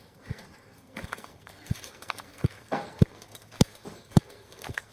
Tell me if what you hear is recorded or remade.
remade